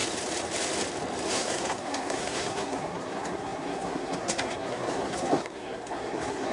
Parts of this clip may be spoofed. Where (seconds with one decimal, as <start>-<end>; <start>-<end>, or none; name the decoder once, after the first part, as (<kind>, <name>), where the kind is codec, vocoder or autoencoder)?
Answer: 1.3-6.5 (codec, SNAC)